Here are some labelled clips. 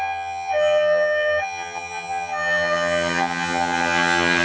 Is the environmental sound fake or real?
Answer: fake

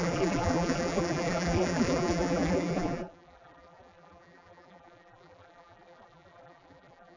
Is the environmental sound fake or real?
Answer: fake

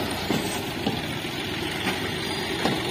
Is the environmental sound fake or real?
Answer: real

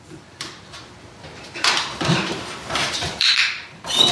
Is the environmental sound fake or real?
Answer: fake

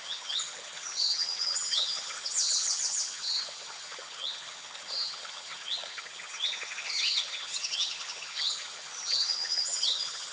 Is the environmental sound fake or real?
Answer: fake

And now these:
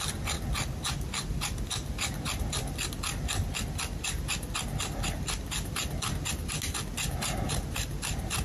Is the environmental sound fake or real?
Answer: real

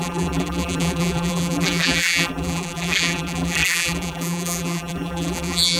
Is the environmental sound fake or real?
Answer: fake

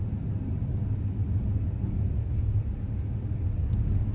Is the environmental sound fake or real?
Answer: real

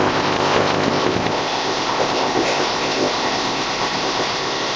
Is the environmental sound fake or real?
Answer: fake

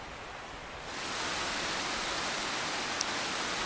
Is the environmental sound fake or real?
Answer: real